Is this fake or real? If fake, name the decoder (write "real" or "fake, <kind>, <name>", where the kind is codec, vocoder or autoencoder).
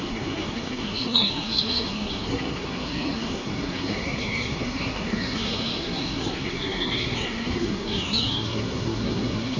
fake, codec, SNAC